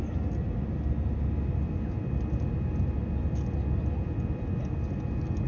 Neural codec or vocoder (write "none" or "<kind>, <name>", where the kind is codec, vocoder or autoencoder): none